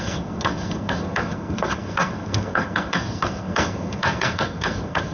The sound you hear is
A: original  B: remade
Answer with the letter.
B